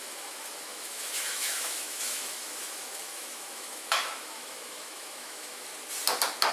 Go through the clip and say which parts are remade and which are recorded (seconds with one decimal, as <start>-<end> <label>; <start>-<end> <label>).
0.0-5.7 remade; 5.7-6.5 recorded

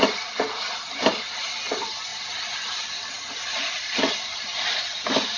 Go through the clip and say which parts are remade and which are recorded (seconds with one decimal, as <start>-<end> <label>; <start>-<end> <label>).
0.0-5.4 recorded

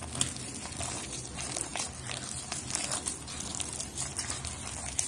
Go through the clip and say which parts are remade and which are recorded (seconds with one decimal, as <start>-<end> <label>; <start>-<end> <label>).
0.0-5.1 recorded

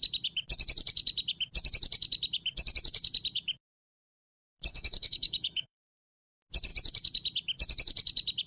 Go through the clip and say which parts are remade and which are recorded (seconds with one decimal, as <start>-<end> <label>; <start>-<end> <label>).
0.0-4.7 recorded; 4.7-6.1 remade; 6.1-8.5 recorded

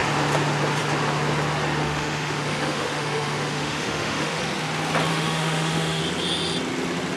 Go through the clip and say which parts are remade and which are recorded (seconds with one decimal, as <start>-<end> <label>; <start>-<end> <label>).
0.0-1.8 recorded; 1.8-4.4 remade; 4.4-5.1 recorded; 5.1-6.0 remade; 6.0-7.2 recorded